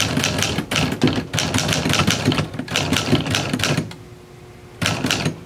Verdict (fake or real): real